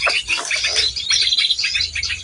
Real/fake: real